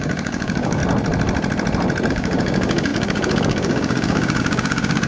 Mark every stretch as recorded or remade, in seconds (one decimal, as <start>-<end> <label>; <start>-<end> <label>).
0.0-0.8 remade; 0.8-2.1 recorded; 2.1-5.1 remade